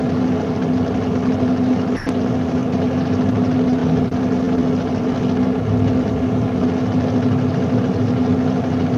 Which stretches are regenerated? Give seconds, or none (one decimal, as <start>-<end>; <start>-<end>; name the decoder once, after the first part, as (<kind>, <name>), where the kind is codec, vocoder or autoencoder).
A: none